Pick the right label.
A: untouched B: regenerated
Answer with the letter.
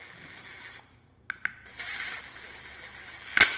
A